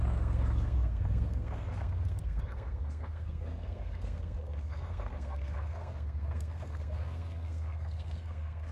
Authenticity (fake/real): fake